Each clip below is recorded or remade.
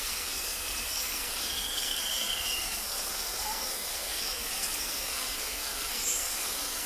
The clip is remade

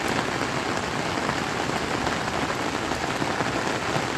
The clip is recorded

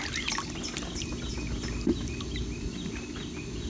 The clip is recorded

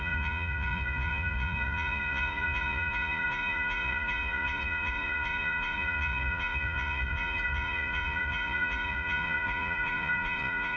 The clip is remade